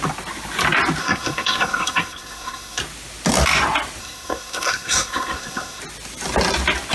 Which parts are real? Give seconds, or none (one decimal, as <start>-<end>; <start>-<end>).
0.0-1.0; 2.8-4.0; 5.8-6.9